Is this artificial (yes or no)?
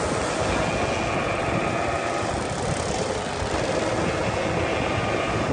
no